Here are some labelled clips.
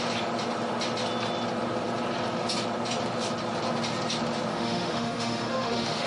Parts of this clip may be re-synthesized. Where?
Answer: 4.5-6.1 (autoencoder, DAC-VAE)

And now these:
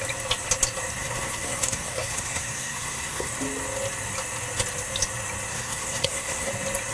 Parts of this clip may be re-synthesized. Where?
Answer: 1.0-3.3 (codec, SNAC); 5.5-6.5

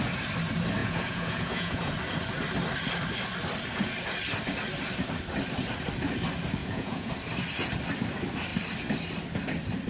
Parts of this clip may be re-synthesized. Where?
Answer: 0.8-1.9 (vocoder, Vocos); 6.6-7.1

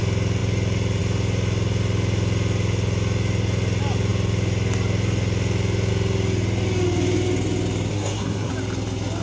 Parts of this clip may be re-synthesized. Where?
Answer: 7.9-8.5 (codec, SNAC)

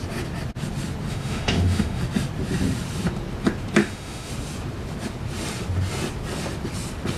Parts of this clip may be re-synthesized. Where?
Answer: 1.1-2.0 (autoencoder, DAC-VAE); 3.8-4.3

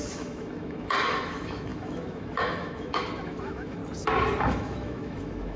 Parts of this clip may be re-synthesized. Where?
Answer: 0.0-3.8 (autoencoder, DAC-VAE); 4.4-5.6

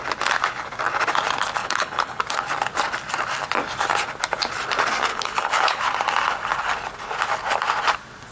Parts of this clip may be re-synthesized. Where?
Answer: 1.6-2.2 (codec, HILCodec); 5.1-5.8

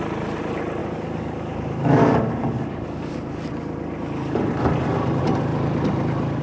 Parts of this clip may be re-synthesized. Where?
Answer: 0.8-3.5 (codec, DAC)